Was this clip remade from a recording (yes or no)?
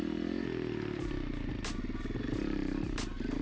no